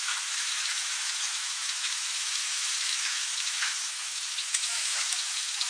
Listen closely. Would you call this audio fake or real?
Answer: fake